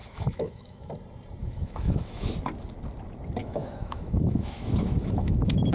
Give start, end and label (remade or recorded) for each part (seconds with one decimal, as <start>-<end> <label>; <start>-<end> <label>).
0.0-0.9 remade; 0.9-1.4 recorded; 1.4-2.3 remade; 2.3-3.4 recorded; 3.4-5.7 remade